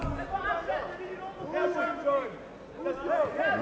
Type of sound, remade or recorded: recorded